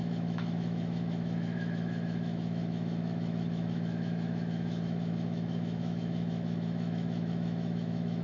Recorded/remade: remade